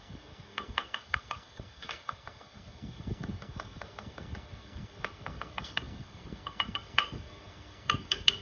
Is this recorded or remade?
remade